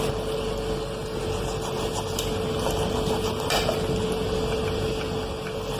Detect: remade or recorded recorded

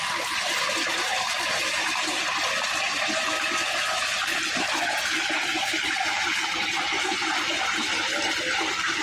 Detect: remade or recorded remade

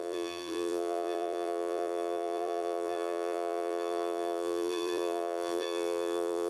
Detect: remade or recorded remade